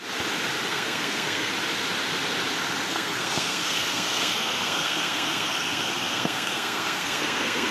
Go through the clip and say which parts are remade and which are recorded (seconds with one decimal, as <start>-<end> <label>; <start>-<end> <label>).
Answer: 0.0-0.7 recorded; 0.7-1.5 remade; 1.5-2.9 recorded; 2.9-7.7 remade